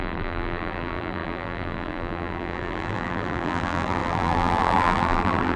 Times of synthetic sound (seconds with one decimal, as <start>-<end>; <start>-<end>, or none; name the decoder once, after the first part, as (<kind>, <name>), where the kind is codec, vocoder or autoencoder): 0.0-5.6 (vocoder, BigVGAN v2)